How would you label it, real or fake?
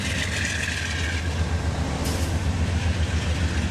real